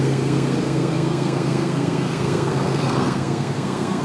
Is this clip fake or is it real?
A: fake